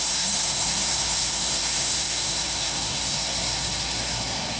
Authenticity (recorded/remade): remade